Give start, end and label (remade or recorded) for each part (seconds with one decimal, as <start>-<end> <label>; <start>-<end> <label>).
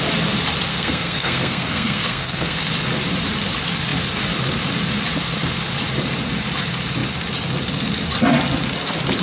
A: 0.0-0.7 recorded; 0.7-2.7 remade; 2.7-9.2 recorded